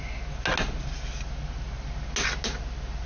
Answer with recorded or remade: recorded